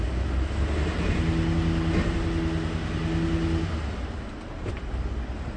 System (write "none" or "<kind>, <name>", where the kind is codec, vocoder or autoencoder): none